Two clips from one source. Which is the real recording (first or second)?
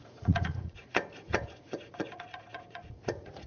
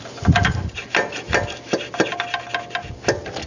second